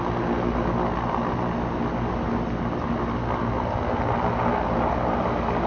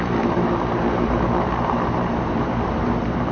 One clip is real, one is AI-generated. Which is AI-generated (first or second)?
second